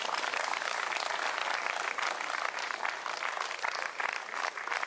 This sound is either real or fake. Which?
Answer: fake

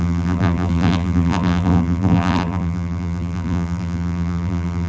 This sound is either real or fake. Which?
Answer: fake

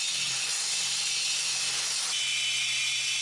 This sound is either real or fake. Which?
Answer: real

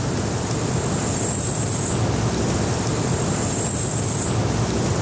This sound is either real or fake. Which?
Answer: real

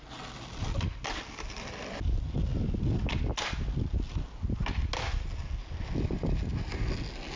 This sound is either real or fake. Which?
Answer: real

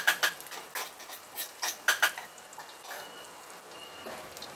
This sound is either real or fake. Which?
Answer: real